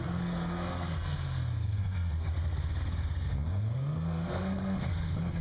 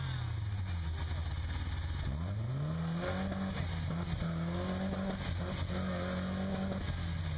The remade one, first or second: first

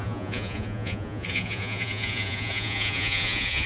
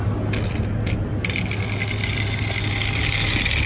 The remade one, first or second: first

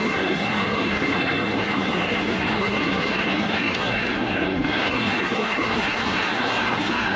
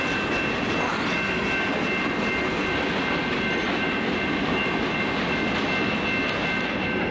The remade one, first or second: first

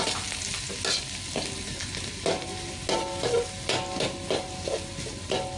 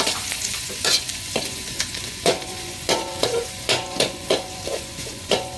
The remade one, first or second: second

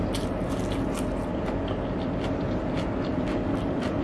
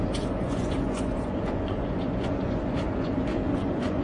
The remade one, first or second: second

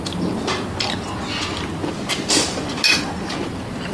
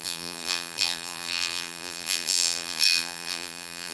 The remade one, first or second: second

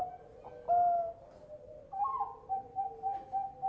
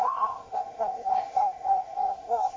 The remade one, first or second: second